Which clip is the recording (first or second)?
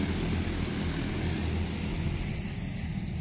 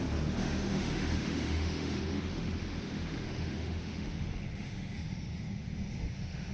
first